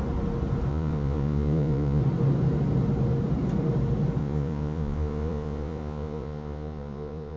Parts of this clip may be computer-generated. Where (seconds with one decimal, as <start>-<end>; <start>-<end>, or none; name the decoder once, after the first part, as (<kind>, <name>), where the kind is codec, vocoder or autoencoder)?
0.7-2.0 (vocoder, Vocos); 4.2-7.4